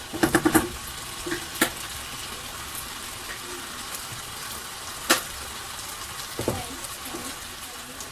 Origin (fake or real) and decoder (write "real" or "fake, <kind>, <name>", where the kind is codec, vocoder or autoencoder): real